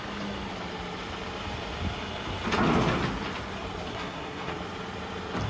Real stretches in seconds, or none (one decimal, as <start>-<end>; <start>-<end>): 0.0-3.9; 4.5-5.5